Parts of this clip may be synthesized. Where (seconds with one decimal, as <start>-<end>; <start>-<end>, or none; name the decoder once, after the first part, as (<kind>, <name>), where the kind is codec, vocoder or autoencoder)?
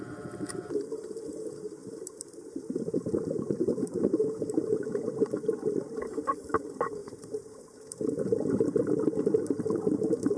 1.8-4.6 (vocoder, BigVGAN v2); 7.0-8.8